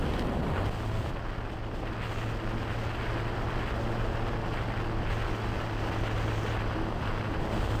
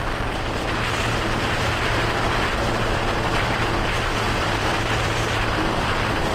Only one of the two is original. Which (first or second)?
first